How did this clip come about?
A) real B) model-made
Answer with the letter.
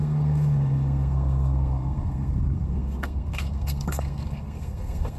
B